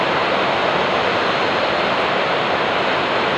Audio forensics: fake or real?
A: real